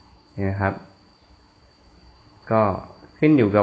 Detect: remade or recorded remade